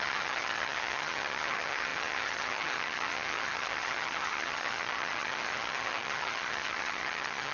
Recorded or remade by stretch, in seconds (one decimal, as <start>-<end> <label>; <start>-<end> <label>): 0.0-7.5 remade